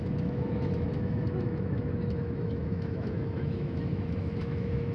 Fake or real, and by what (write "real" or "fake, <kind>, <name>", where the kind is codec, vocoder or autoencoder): fake, autoencoder, DAC-VAE